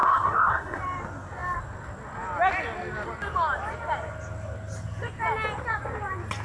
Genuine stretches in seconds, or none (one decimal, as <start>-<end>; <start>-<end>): 0.8-6.4

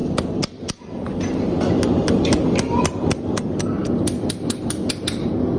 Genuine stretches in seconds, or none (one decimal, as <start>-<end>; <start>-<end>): 0.0-5.6

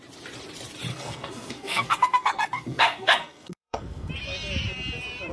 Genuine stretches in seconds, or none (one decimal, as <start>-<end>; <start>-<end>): 0.0-0.9; 4.1-5.3

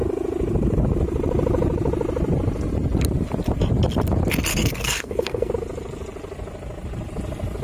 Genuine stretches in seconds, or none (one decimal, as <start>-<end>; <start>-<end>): 0.0-4.5; 5.5-7.6

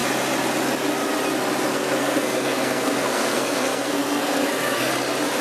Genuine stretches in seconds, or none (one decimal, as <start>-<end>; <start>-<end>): 0.0-1.7; 4.9-5.4